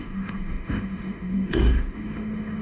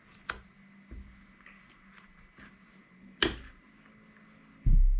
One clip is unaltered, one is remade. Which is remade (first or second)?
first